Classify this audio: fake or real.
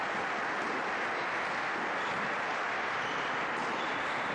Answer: real